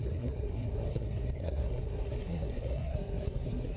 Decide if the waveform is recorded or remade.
remade